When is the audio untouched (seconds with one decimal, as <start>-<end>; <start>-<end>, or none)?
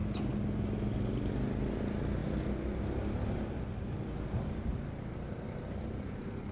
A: 0.0-6.5